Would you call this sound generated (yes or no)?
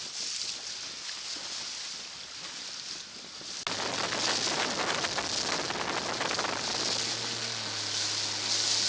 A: no